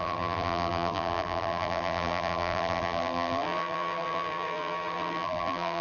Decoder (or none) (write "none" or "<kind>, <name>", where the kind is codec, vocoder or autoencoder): vocoder, BigVGAN v2